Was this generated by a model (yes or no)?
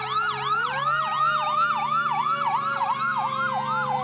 no